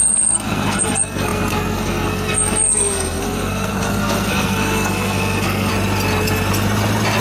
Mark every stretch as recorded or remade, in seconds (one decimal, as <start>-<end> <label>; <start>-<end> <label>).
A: 0.0-5.7 remade; 5.7-7.2 recorded

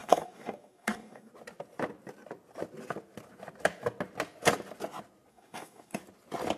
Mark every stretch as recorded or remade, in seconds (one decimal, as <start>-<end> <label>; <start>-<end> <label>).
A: 0.0-1.3 remade; 1.3-5.3 recorded; 5.3-6.0 remade; 6.0-6.6 recorded

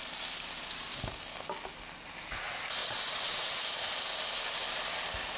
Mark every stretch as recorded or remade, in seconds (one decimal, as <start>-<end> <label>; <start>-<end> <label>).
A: 0.0-2.8 recorded; 2.8-3.6 remade; 3.6-5.4 recorded

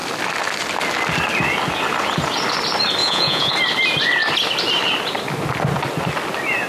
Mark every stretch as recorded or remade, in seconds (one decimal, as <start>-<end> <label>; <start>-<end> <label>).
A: 0.0-3.0 recorded; 3.0-3.5 remade; 3.5-6.7 recorded

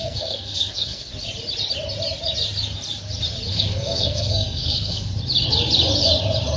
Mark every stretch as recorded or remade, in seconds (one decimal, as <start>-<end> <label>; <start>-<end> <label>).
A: 0.0-1.1 remade; 1.1-3.5 recorded; 3.5-5.1 remade; 5.1-6.6 recorded